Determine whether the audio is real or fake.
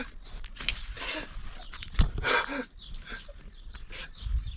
real